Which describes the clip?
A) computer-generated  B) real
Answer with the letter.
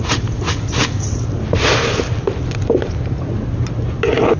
B